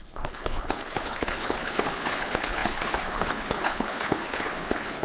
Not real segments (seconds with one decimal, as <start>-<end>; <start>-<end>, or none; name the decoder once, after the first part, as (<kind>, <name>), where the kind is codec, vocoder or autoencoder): 0.0-5.0 (codec, HILCodec)